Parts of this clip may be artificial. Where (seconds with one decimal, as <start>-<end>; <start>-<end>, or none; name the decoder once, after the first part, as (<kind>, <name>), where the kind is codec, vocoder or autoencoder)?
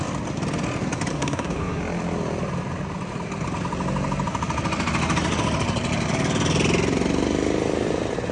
1.1-1.8 (codec, SNAC)